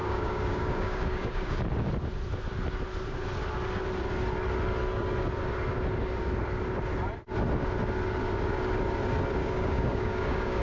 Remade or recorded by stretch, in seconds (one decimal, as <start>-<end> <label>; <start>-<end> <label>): 0.0-1.6 remade; 1.6-9.4 recorded; 9.4-10.6 remade